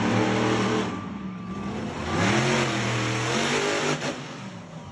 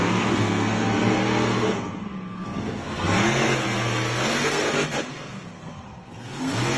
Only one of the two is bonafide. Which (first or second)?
first